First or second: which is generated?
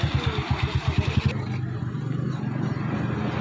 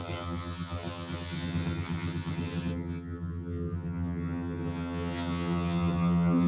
second